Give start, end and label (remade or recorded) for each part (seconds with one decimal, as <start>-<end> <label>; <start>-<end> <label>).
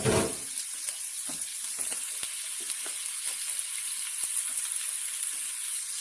0.0-6.0 recorded